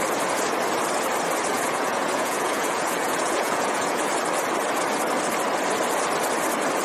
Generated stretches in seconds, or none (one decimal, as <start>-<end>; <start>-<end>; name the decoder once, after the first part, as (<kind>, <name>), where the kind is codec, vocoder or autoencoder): 1.5-4.0 (vocoder, Vocos)